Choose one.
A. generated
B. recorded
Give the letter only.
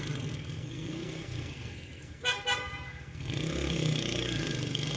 A